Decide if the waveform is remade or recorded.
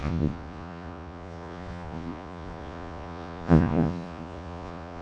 remade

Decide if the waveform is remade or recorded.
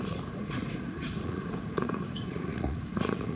remade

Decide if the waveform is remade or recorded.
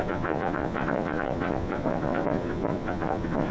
remade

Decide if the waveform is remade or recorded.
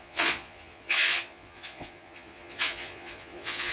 remade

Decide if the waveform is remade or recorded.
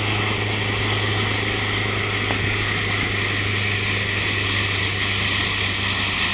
recorded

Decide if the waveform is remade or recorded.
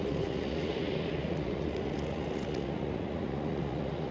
remade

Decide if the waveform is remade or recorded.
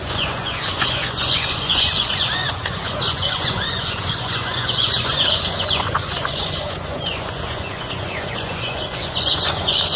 remade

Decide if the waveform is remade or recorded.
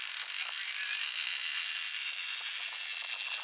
recorded